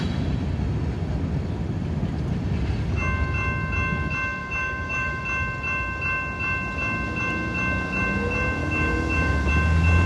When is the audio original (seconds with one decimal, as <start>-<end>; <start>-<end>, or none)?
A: 0.0-4.4; 5.2-8.6; 9.5-10.1